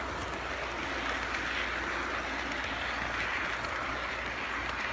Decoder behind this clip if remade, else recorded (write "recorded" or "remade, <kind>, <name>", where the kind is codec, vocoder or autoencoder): recorded